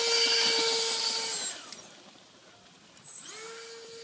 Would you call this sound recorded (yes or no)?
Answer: yes